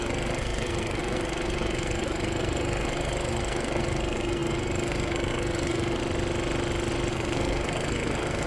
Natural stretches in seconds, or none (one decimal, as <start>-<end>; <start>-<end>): 6.0-7.1